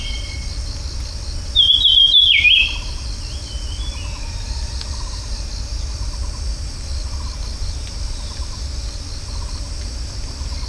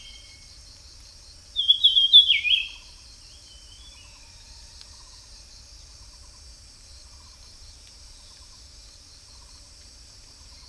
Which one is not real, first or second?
second